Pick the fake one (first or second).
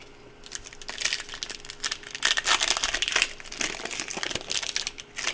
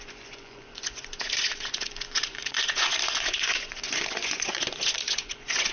second